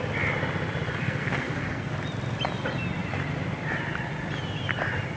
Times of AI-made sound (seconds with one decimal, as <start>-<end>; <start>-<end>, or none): 1.0-1.9